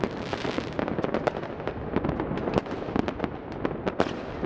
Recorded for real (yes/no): yes